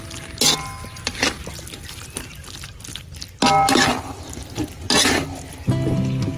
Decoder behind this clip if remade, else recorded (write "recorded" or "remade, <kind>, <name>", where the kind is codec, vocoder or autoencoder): recorded